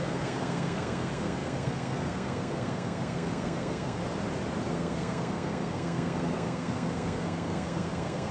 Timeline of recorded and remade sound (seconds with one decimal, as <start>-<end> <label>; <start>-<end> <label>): 0.0-4.0 remade; 4.0-4.7 recorded; 4.7-8.3 remade